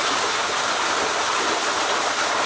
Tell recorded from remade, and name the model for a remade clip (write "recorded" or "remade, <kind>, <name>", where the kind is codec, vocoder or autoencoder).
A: recorded